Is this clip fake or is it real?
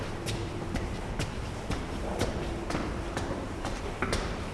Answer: fake